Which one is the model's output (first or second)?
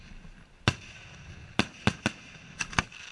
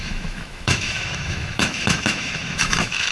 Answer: second